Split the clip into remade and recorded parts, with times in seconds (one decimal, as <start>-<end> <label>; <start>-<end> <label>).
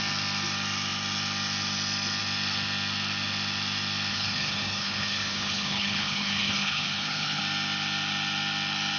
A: 0.0-4.1 recorded; 4.1-7.4 remade; 7.4-9.0 recorded